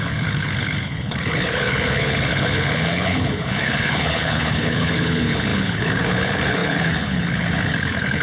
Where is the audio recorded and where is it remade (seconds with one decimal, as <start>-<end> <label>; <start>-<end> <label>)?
0.0-8.2 remade